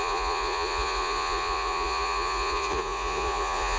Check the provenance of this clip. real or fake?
fake